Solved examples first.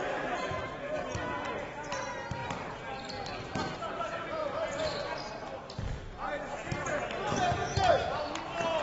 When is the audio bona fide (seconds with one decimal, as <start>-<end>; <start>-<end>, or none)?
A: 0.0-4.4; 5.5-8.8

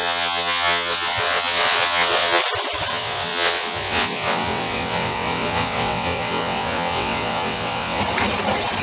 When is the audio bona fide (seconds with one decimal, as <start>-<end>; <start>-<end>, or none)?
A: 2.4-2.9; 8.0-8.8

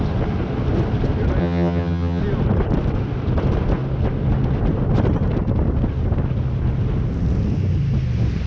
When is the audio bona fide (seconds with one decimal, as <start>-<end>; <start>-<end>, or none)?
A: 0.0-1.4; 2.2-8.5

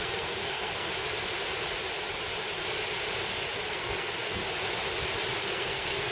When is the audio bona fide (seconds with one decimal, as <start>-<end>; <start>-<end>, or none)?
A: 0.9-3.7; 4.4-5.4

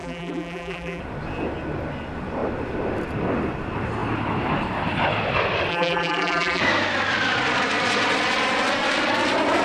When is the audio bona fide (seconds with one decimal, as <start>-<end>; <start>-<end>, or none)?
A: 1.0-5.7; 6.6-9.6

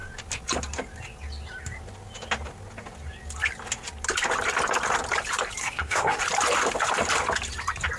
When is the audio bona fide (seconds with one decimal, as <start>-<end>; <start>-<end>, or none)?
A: 0.0-5.6; 6.2-8.0